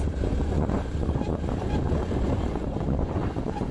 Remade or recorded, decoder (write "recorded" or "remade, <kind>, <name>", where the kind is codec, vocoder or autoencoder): remade, vocoder, Vocos